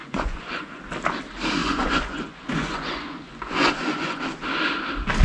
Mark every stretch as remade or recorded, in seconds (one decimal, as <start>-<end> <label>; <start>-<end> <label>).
0.0-0.8 remade; 0.8-1.6 recorded; 1.6-4.2 remade; 4.2-5.2 recorded